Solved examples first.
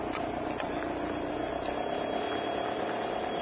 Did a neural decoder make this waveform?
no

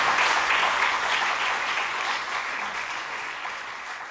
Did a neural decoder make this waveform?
yes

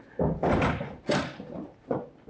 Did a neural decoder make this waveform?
no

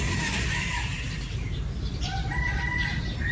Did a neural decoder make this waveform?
yes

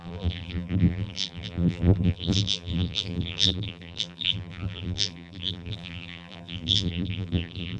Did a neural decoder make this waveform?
yes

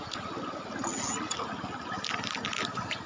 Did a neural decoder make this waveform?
no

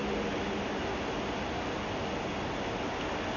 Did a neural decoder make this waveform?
no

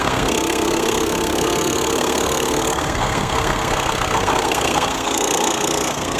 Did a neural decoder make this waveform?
yes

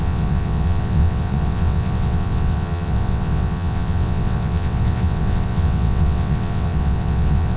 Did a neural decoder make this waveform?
yes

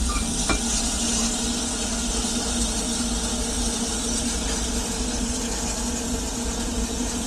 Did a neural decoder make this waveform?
no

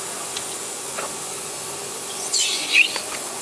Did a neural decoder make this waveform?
yes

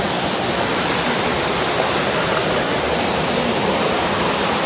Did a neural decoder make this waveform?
no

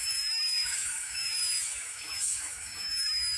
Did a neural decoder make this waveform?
yes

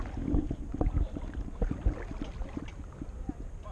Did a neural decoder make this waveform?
no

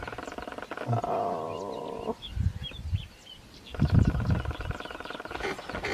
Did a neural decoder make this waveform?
no